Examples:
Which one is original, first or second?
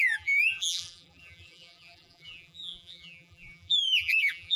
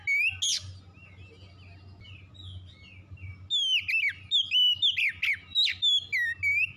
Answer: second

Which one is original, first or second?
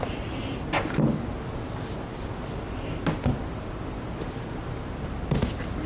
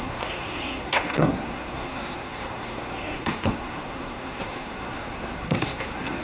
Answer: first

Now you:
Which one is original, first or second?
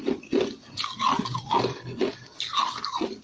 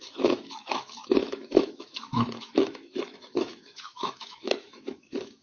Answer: first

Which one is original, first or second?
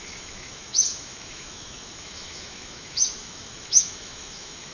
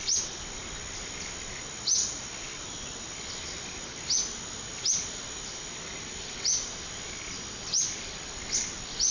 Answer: second